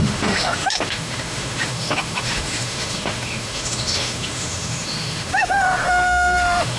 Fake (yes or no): yes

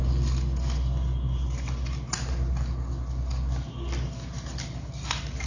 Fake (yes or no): no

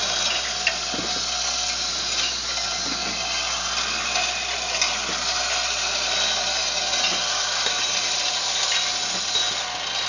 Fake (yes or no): no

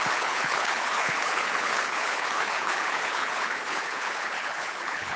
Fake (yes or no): yes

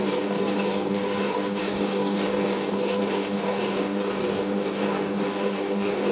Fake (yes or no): yes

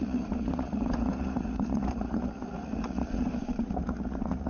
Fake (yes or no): yes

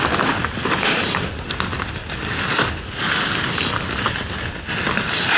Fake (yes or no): no